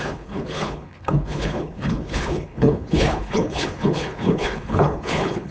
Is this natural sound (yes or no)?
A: no